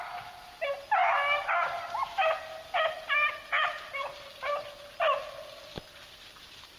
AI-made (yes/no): no